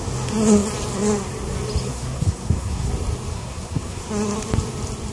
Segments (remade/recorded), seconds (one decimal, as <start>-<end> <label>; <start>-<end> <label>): 0.0-1.9 recorded; 1.9-2.9 remade; 2.9-3.3 recorded; 3.3-4.1 remade; 4.1-5.1 recorded